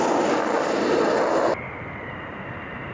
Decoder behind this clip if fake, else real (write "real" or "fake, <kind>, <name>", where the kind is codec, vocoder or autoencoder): real